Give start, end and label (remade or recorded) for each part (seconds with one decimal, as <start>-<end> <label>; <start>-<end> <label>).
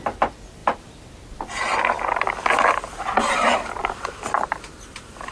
0.0-5.3 recorded